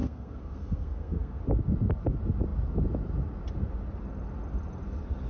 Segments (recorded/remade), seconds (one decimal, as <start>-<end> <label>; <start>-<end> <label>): 0.0-1.4 remade; 1.4-5.3 recorded